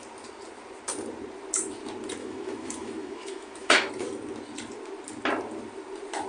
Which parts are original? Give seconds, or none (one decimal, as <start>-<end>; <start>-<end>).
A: 0.0-2.2; 3.9-6.3